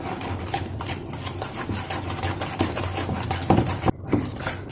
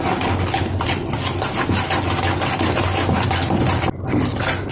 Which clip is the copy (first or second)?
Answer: first